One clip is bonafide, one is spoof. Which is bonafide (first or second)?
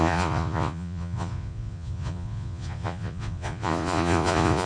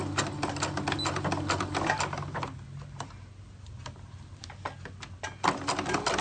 second